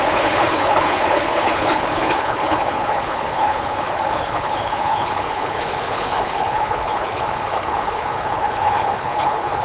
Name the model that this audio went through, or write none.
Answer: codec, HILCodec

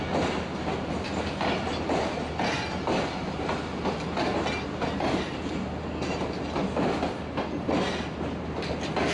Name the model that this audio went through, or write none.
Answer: none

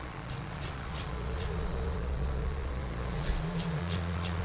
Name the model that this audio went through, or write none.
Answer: vocoder, Vocos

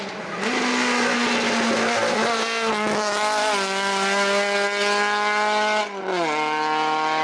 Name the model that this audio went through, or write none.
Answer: none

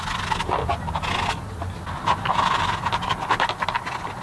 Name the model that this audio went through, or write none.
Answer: none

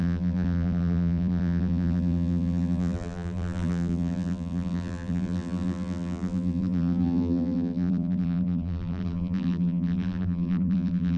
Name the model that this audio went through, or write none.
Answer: vocoder, BigVGAN v2